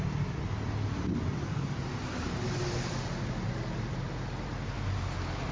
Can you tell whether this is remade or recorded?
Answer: recorded